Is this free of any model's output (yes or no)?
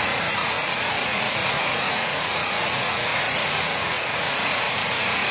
no